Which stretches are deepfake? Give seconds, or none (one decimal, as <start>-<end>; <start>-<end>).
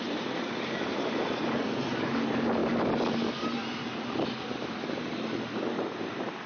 none